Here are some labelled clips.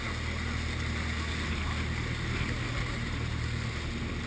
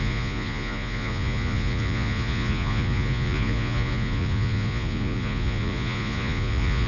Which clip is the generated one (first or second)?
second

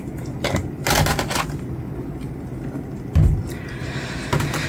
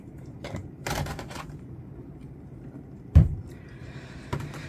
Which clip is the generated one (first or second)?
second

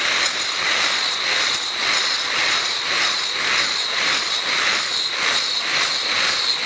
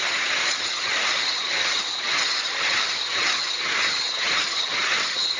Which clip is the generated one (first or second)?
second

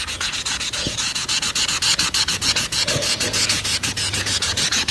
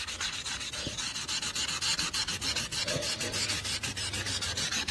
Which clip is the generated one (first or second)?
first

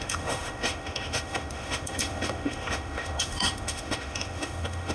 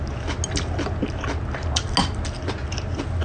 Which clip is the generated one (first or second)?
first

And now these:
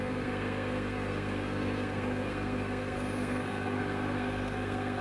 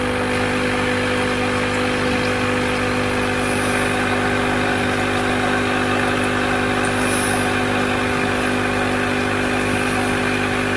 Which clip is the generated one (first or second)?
first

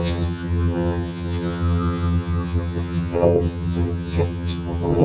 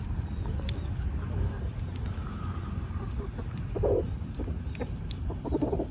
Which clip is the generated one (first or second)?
first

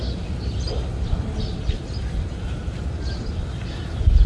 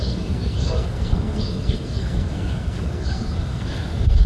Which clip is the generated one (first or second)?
second